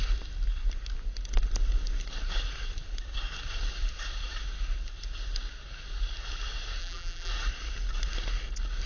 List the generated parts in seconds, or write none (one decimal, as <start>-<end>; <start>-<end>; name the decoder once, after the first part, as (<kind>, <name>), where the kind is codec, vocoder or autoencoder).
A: 6.8-7.3 (vocoder, BigVGAN v2)